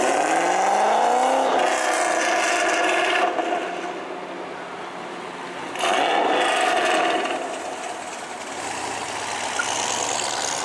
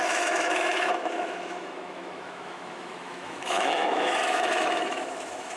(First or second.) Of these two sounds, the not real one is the second